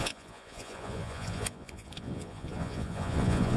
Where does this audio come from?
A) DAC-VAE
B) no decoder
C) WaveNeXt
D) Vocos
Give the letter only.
D